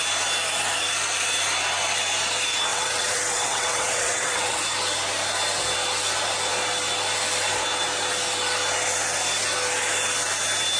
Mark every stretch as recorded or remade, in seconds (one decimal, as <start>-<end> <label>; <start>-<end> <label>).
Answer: 0.0-2.7 recorded; 2.7-4.6 remade; 4.6-10.8 recorded